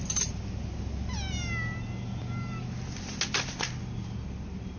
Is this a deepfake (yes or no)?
no